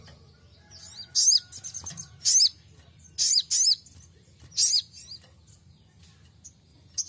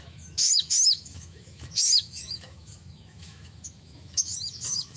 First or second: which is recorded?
first